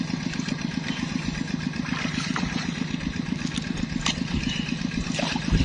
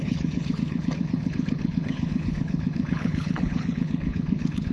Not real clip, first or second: second